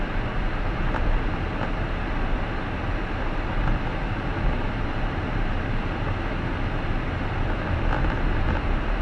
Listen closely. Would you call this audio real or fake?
real